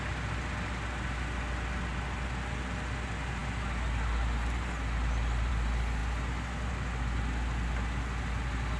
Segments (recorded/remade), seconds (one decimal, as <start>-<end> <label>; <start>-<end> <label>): 0.0-8.8 recorded